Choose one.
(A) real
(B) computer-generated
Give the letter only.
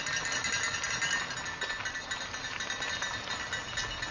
A